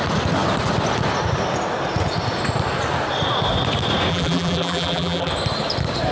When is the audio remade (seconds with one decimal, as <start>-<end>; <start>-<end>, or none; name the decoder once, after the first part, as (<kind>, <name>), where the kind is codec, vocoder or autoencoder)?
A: 4.1-5.3 (vocoder, BigVGAN v2)